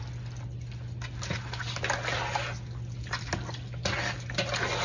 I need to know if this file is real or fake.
real